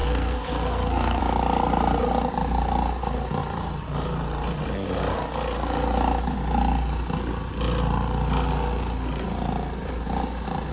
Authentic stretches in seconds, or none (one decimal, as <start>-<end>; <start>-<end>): 1.2-10.7